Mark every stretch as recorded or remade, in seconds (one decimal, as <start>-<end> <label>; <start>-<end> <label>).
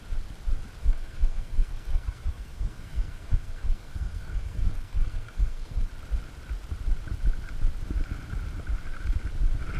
0.0-0.8 recorded; 0.8-5.9 remade; 5.9-9.8 recorded